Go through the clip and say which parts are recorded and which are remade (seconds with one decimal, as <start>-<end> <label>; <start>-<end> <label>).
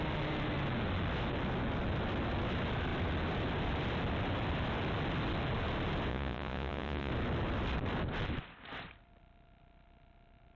0.0-6.1 recorded; 6.1-7.1 remade; 7.1-10.5 recorded